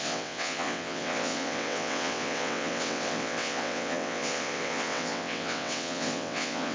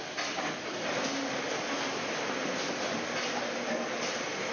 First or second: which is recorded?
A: second